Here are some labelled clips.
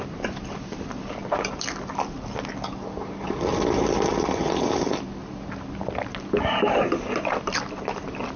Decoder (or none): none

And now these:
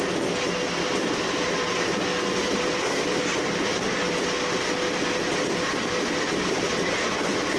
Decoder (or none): none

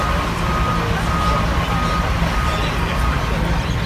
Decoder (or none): none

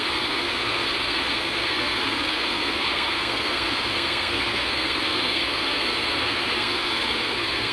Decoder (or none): codec, SNAC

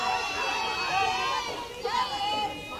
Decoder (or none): none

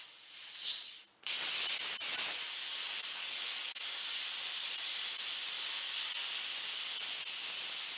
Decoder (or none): none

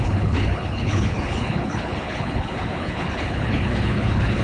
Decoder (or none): codec, HILCodec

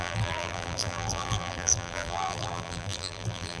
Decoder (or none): vocoder, BigVGAN v2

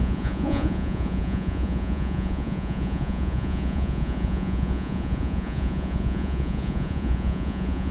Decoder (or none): vocoder, Vocos